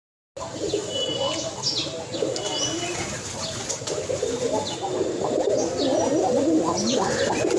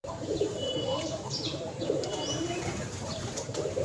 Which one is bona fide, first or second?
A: first